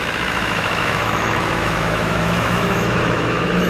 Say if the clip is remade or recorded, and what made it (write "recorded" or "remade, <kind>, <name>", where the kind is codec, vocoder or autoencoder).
remade, autoencoder, DAC-VAE